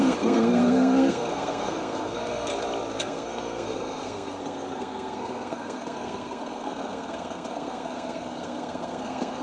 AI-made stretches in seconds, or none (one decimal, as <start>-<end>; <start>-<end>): 0.0-2.5; 3.0-9.4